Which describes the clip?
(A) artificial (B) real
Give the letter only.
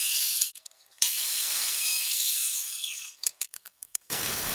A